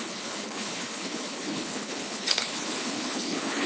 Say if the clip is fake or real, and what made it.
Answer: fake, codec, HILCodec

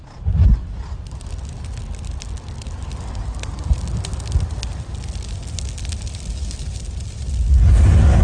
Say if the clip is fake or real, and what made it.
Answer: real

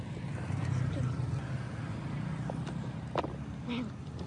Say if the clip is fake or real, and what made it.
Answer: real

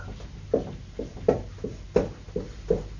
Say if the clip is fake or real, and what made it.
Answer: real